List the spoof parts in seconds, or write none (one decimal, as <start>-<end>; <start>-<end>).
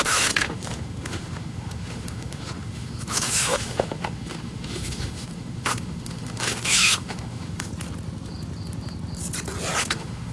0.0-7.7; 9.8-10.3